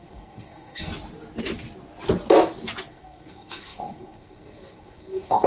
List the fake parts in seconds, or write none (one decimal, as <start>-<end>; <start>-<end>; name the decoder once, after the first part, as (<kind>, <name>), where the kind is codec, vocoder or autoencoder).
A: 0.0-0.9 (codec, SNAC); 2.9-5.5